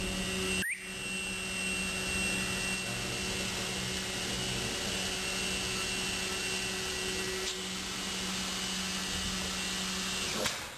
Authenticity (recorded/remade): recorded